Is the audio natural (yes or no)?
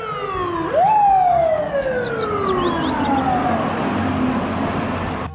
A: yes